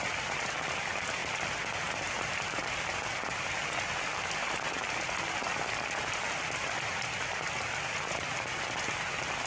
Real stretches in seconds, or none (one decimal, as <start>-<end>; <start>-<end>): 0.0-9.5